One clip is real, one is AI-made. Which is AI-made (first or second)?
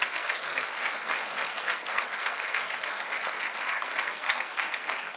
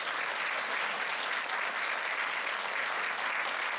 first